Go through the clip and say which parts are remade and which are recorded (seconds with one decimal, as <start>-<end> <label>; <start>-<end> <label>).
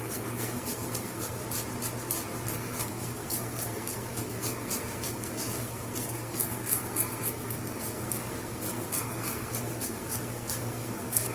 0.0-1.4 remade; 1.4-2.5 recorded; 2.5-11.3 remade